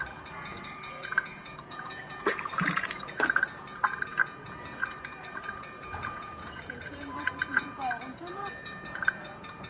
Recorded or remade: remade